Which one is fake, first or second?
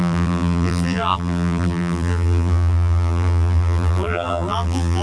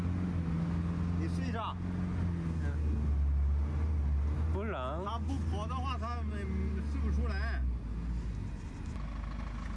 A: first